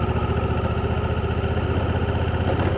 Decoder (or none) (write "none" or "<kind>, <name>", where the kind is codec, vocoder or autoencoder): none